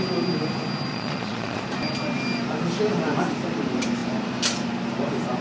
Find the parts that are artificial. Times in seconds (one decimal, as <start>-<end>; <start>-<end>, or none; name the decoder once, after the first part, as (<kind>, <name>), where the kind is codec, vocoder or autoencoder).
0.9-1.6 (vocoder, Vocos)